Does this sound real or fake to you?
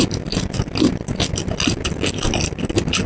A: real